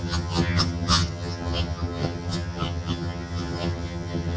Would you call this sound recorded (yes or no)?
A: no